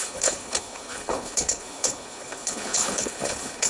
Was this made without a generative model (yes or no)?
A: no